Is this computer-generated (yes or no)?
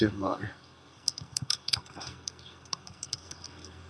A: yes